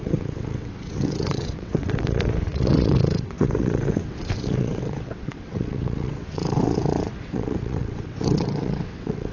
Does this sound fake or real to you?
fake